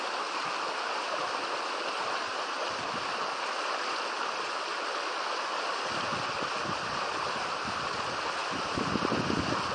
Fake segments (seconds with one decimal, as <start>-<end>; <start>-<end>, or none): 0.0-5.7; 7.4-8.4